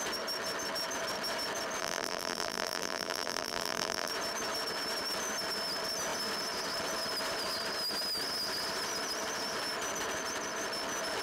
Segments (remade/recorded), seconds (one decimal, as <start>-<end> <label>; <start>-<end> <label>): 0.0-1.8 recorded; 1.8-4.1 remade; 4.1-11.2 recorded